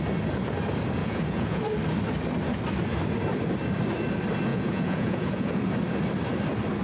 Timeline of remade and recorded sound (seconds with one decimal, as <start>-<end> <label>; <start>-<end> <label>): 0.0-1.0 recorded; 1.0-1.6 remade; 1.6-4.5 recorded; 4.5-5.5 remade; 5.5-6.8 recorded